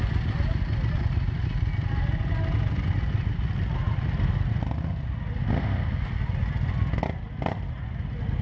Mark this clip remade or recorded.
recorded